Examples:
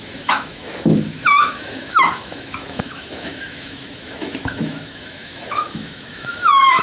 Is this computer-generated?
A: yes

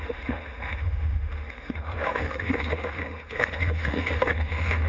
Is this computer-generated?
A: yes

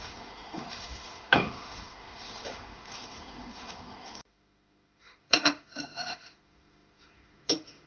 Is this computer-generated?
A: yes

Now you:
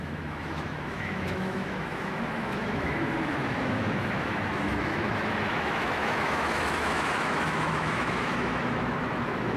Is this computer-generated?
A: yes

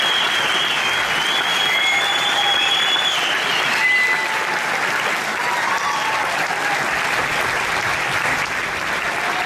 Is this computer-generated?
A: no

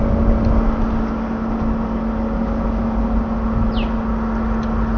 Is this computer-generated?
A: no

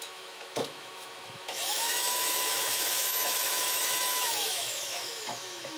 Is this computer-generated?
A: yes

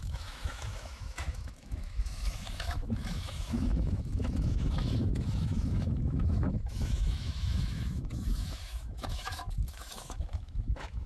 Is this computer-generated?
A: yes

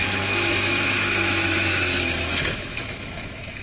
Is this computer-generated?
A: yes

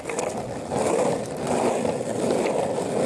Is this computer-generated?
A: no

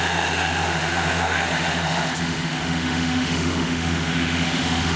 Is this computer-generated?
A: yes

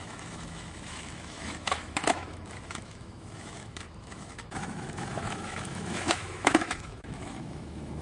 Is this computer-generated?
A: yes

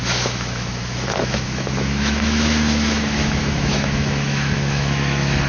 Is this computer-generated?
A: yes